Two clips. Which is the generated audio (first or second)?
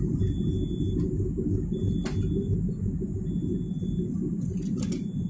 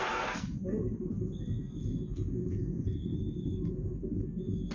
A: second